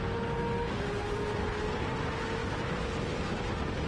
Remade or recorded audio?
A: recorded